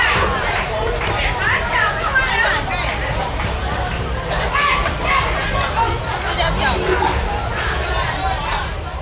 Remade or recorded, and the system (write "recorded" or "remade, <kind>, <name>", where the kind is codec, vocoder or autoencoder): recorded